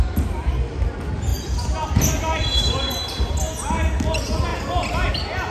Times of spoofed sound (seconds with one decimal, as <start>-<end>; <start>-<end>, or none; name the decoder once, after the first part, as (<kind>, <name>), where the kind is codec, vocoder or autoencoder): none